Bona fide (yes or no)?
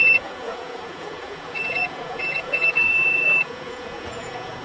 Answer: no